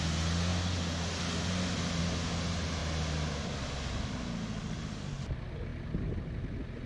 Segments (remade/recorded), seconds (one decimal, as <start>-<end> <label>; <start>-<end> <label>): 0.0-6.9 recorded